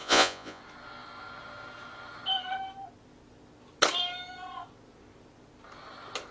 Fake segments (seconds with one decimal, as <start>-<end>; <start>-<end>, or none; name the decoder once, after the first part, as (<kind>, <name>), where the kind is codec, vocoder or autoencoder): 0.0-0.6 (vocoder, Vocos)